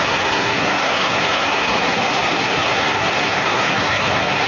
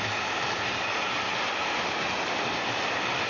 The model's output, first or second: first